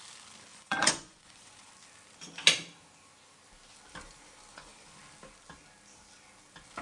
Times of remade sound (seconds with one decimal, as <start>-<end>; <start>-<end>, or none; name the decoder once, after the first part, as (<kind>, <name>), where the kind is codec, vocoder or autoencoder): 0.5-1.7 (vocoder, Vocos); 4.5-5.0